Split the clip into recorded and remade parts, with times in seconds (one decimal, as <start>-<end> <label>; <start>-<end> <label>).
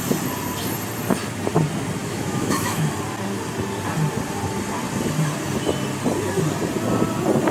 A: 0.0-2.0 recorded; 2.0-2.9 remade; 2.9-7.5 recorded